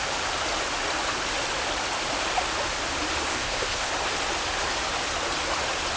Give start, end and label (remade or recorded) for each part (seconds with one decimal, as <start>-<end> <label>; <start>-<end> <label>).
0.0-3.3 recorded; 3.3-3.9 remade; 3.9-6.0 recorded